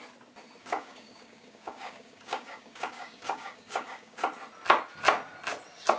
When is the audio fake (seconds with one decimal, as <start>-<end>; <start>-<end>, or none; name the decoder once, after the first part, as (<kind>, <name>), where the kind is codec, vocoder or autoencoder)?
0.6-4.2 (codec, DAC)